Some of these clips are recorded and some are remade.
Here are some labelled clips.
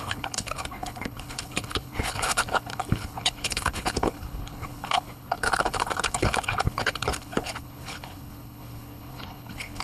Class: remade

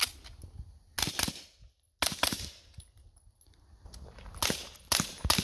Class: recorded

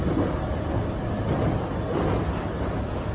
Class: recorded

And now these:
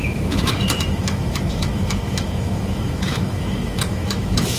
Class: remade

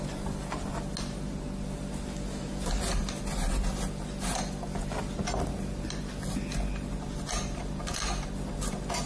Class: recorded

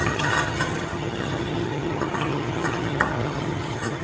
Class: remade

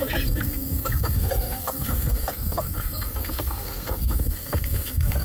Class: remade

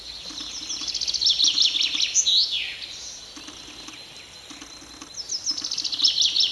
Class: recorded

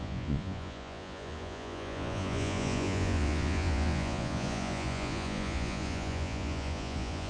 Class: remade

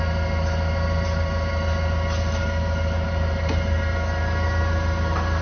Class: recorded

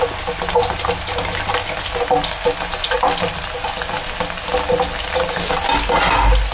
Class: recorded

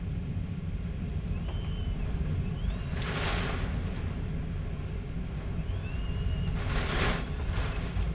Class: recorded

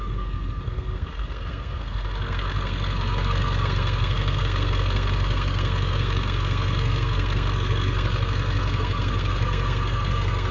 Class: remade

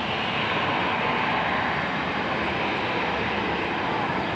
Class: recorded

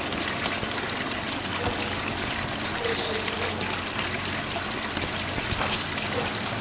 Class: recorded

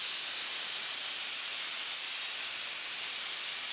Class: recorded